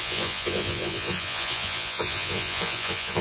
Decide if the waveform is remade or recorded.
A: remade